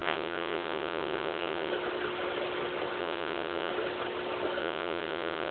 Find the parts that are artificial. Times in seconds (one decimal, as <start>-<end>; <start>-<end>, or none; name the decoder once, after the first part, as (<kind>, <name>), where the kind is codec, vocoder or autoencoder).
0.0-1.7 (vocoder, WaveNeXt); 3.0-3.7; 4.6-5.5